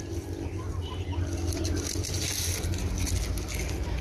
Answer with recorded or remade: recorded